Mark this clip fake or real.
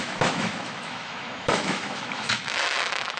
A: fake